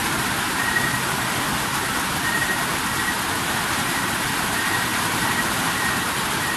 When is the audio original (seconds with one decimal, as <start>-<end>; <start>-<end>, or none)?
0.0-4.0